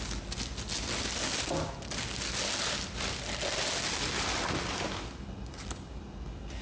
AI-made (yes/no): no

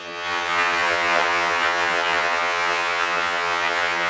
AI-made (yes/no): yes